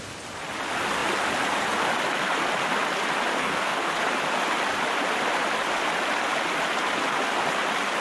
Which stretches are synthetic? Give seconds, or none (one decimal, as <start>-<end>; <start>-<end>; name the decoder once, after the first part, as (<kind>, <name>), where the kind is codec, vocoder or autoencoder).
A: 3.4-3.9 (codec, DAC)